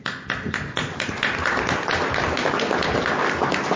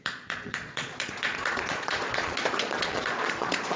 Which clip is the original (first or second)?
first